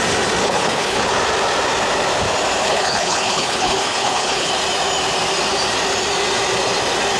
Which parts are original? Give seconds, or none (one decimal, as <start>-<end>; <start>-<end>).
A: 0.0-0.4; 1.1-2.6; 4.5-7.2